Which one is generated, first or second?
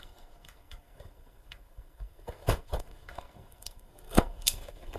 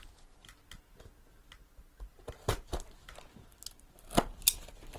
first